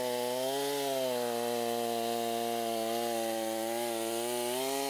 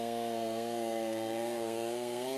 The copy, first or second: second